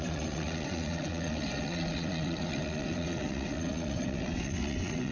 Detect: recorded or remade remade